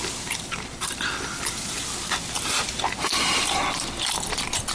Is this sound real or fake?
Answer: real